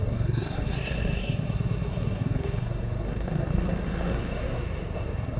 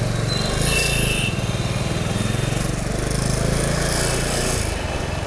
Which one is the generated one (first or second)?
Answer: first